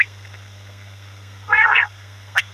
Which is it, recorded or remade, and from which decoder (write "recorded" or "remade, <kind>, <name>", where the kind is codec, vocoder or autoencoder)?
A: remade, codec, SNAC